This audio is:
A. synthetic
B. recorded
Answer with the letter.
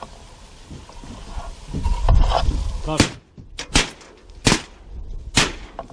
B